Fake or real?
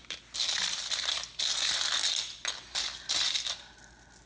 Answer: real